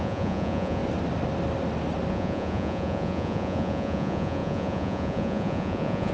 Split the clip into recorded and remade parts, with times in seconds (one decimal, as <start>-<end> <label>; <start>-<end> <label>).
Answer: 0.0-0.8 remade; 0.8-2.1 recorded; 2.1-6.1 remade